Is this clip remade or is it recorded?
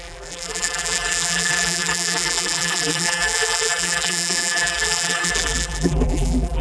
remade